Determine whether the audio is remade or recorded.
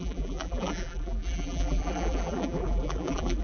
remade